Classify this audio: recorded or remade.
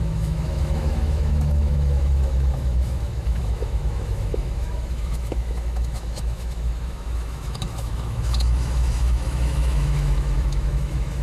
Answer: remade